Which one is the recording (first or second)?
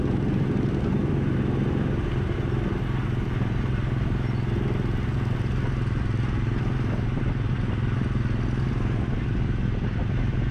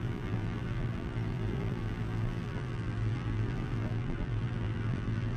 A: first